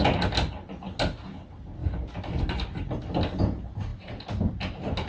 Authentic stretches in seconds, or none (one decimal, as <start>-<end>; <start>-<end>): 0.0-5.1